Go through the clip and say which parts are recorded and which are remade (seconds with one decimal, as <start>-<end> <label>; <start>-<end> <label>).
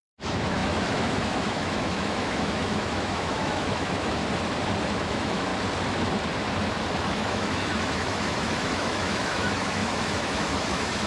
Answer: 0.0-4.2 remade; 4.2-5.0 recorded; 5.0-5.5 remade; 5.5-7.0 recorded; 7.0-11.1 remade